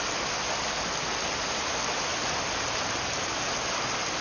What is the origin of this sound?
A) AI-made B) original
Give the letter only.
B